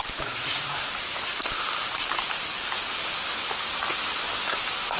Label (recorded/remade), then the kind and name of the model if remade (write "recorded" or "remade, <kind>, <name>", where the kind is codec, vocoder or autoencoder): recorded